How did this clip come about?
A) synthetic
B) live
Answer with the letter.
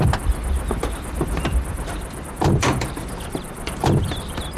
A